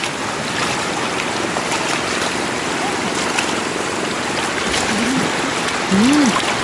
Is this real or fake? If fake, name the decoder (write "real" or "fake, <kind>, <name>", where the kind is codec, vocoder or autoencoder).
real